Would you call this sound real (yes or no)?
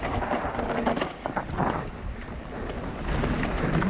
yes